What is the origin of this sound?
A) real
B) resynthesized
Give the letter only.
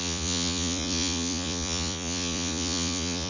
B